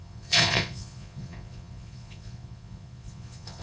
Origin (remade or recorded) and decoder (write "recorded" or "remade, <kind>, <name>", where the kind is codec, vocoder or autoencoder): remade, vocoder, Vocos